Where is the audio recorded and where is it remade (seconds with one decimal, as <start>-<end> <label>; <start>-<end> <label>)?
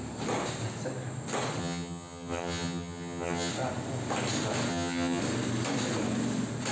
0.0-1.6 recorded; 1.6-3.5 remade; 3.5-4.7 recorded; 4.7-5.2 remade; 5.2-6.7 recorded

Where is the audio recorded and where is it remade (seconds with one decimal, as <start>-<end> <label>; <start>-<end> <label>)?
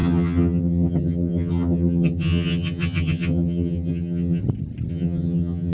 0.0-4.4 remade; 4.4-4.9 recorded; 4.9-5.7 remade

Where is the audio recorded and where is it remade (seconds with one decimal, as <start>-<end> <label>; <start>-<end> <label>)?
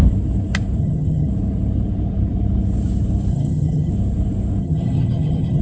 0.0-0.8 recorded; 0.8-1.3 remade; 1.3-3.3 recorded; 3.3-3.9 remade; 3.9-4.6 recorded; 4.6-5.6 remade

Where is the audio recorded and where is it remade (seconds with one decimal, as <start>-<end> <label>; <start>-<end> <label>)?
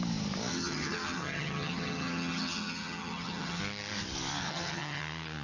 0.0-0.5 recorded; 0.5-3.6 remade; 3.6-4.4 recorded; 4.4-5.0 remade; 5.0-5.4 recorded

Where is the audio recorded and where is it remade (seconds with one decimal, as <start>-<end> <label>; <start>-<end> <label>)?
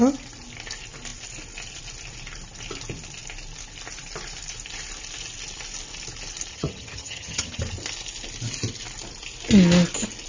0.0-6.5 recorded; 6.5-7.6 remade; 7.6-10.3 recorded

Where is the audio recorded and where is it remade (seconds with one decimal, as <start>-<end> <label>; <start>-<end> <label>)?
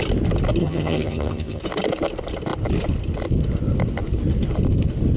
0.0-0.6 recorded; 0.6-1.6 remade; 1.6-5.2 recorded